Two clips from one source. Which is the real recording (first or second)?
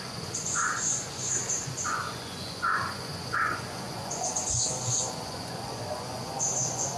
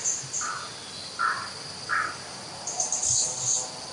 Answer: second